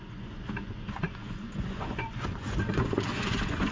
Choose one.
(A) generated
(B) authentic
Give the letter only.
A